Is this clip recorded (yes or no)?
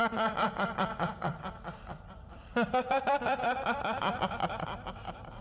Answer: no